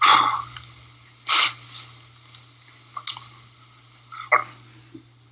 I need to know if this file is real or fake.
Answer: real